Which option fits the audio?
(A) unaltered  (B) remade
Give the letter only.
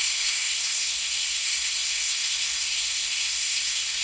B